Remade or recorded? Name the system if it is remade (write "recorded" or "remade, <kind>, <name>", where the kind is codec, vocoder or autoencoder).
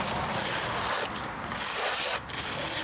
recorded